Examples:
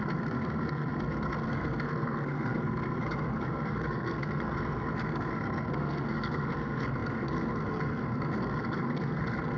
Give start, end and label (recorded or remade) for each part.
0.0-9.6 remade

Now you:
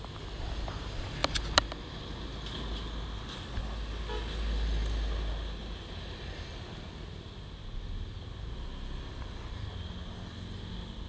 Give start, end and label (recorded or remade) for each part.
0.0-11.1 recorded

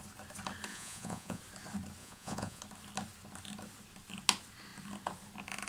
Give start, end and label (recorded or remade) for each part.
0.0-0.7 recorded; 0.7-1.4 remade; 1.4-2.0 recorded; 2.0-2.6 remade; 2.6-5.7 recorded

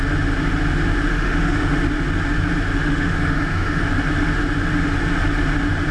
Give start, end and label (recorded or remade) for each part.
0.0-1.1 recorded; 1.1-1.7 remade; 1.7-2.8 recorded; 2.8-3.8 remade; 3.8-5.9 recorded

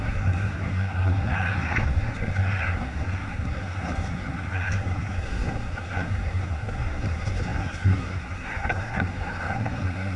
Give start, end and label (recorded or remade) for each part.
0.0-10.2 remade

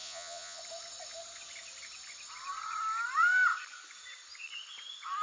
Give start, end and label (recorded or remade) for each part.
0.0-0.6 remade; 0.6-5.2 recorded

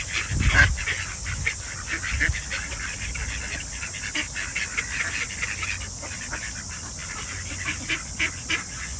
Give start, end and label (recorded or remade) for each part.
0.0-7.0 recorded; 7.0-7.9 remade; 7.9-9.0 recorded

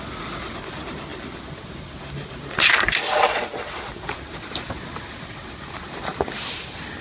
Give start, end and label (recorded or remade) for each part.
0.0-7.0 recorded